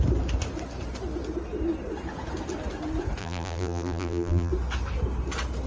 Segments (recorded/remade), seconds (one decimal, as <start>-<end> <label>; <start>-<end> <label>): 0.0-3.2 recorded; 3.2-4.5 remade; 4.5-5.7 recorded